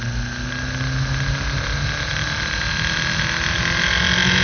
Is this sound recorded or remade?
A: recorded